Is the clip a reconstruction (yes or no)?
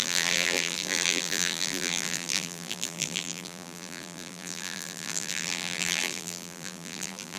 yes